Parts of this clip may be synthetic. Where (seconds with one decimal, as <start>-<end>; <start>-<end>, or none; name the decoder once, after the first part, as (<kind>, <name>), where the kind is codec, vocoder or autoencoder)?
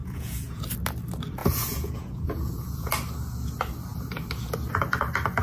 0.0-0.6 (vocoder, Vocos); 1.4-2.9